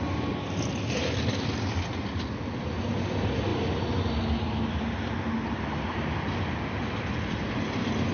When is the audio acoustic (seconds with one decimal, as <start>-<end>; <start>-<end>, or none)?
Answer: 0.0-8.1